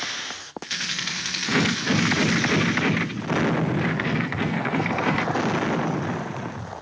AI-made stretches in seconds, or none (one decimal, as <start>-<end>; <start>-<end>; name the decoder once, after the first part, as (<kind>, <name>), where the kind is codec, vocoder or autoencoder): 0.4-2.1 (codec, SNAC); 3.9-5.2

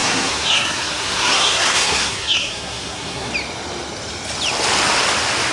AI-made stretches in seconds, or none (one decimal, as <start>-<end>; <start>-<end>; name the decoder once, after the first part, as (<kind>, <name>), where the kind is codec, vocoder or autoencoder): 0.0-3.3 (codec, SNAC)

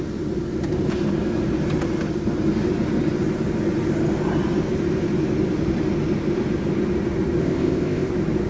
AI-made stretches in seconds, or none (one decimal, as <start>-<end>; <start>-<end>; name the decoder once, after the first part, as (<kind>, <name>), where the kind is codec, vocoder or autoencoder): 7.4-8.1 (codec, ZipCodec)